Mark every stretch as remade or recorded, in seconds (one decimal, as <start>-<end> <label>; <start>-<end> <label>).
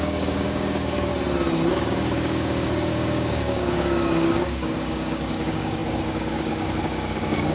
0.0-1.1 remade; 1.1-1.7 recorded; 1.7-7.5 remade